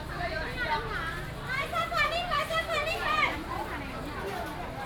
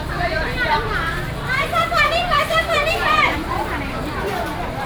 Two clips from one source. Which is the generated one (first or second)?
second